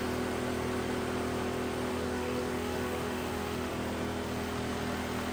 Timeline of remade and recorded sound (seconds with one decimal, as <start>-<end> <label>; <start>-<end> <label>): 0.0-1.9 recorded; 1.9-3.7 remade; 3.7-5.3 recorded